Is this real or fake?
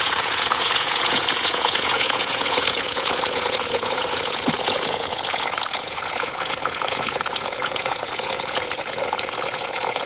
fake